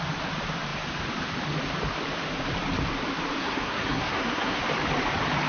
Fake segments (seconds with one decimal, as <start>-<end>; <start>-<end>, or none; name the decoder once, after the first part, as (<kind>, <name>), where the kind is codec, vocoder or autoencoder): 3.4-4.6 (codec, SNAC)